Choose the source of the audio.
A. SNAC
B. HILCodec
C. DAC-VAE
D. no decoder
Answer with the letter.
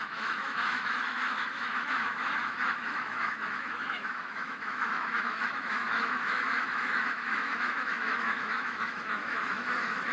C